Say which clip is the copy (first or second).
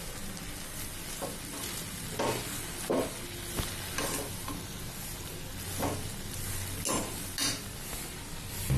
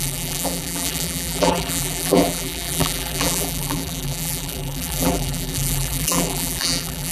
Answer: second